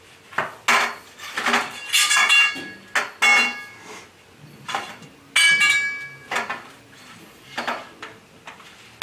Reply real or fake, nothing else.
real